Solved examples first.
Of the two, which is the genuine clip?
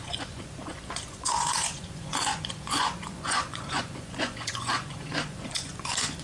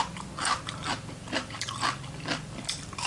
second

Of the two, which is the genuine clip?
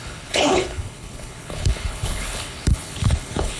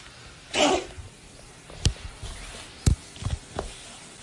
second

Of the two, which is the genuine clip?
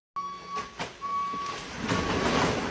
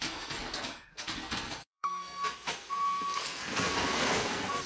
first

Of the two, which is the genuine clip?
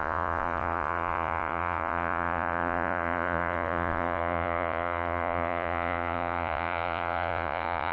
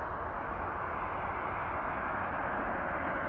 second